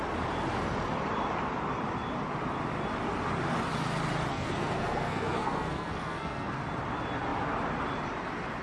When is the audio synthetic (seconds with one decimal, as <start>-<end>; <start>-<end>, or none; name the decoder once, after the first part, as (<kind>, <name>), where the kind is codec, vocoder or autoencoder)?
4.3-6.6 (codec, SNAC)